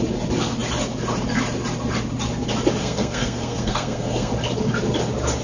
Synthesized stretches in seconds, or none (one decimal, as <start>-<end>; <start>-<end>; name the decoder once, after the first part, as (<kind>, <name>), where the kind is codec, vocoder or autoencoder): 2.8-4.3 (codec, SNAC)